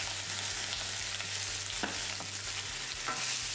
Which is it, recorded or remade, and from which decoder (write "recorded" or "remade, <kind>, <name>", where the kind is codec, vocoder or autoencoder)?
recorded